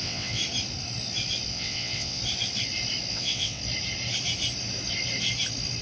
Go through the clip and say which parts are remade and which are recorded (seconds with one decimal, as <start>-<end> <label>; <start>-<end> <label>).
0.0-0.4 remade; 0.4-1.5 recorded; 1.5-2.2 remade; 2.2-3.1 recorded; 3.1-3.6 remade; 3.6-5.8 recorded